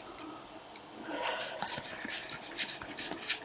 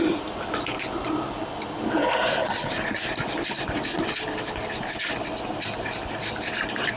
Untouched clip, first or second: second